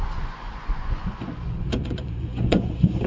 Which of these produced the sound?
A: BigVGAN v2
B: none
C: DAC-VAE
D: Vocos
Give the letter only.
D